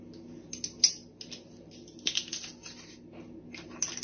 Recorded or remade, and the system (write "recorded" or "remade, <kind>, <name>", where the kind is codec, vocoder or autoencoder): recorded